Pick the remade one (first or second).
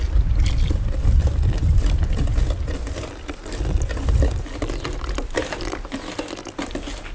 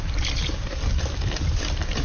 second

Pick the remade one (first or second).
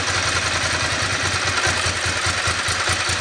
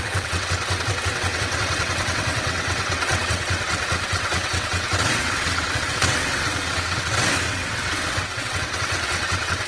second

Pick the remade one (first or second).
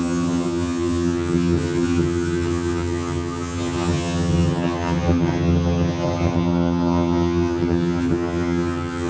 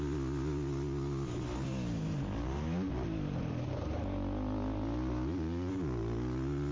first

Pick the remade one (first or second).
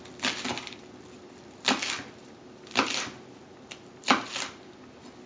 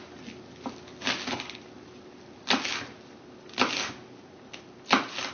first